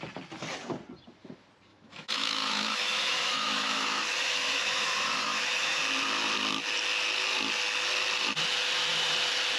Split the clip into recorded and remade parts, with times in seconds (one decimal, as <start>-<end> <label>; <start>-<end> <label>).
0.0-1.7 recorded; 1.7-5.8 remade; 5.8-9.6 recorded